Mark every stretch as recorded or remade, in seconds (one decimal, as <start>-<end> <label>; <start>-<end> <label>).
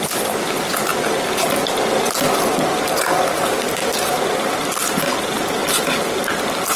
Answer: 0.0-3.4 recorded; 3.4-4.6 remade; 4.6-6.8 recorded